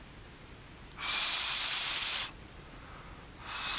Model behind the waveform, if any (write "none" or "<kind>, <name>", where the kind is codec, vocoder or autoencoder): none